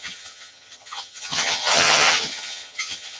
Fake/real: fake